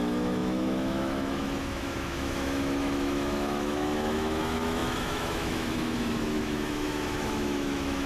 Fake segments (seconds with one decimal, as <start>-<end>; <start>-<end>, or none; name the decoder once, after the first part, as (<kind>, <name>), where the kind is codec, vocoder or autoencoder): 0.0-8.1 (autoencoder, DAC-VAE)